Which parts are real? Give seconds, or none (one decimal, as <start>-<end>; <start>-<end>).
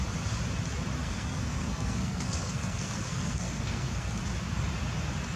0.0-1.0; 4.2-5.4